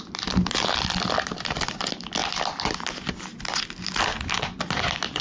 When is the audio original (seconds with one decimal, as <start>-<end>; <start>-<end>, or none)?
0.0-5.2